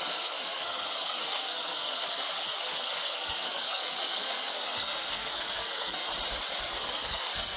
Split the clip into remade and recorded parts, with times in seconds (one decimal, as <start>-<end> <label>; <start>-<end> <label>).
0.0-6.1 remade; 6.1-6.6 recorded; 6.6-7.6 remade